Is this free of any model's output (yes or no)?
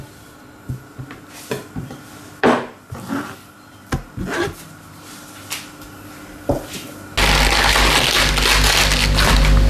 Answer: yes